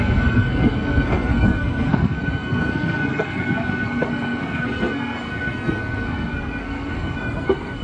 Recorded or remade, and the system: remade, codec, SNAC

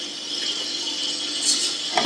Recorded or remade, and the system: recorded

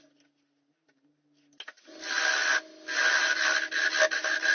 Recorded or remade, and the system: recorded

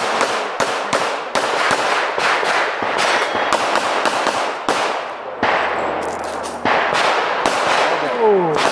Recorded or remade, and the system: recorded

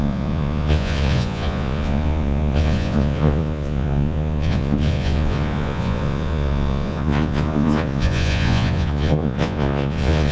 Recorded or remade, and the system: remade, vocoder, Vocos